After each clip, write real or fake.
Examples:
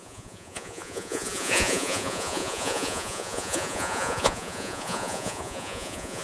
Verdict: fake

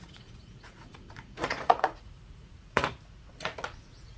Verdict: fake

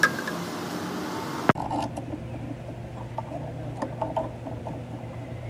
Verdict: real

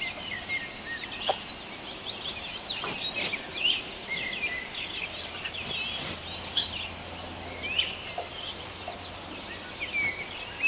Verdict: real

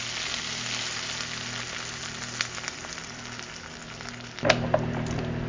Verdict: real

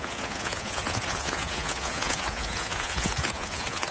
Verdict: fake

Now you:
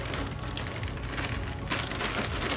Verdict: real